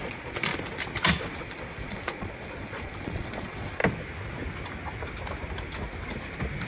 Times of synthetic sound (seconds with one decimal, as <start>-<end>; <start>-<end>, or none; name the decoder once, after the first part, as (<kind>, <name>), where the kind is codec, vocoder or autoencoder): 0.0-0.5 (vocoder, Vocos); 1.4-3.8